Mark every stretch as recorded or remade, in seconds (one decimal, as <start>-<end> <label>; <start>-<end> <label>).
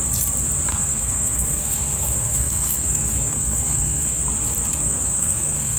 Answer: 0.0-0.7 recorded; 0.7-4.2 remade; 4.2-4.7 recorded; 4.7-5.8 remade